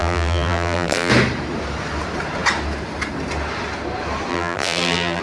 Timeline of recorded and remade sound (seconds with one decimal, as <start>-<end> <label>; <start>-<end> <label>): 0.0-1.1 remade; 1.1-4.3 recorded; 4.3-5.2 remade